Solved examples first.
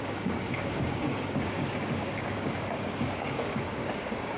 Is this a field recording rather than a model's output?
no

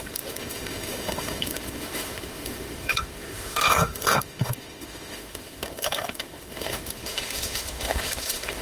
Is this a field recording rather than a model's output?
no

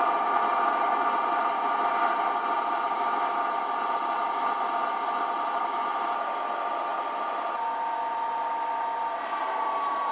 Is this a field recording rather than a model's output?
yes